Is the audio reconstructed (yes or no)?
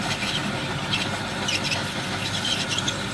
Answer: no